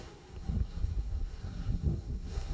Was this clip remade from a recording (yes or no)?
yes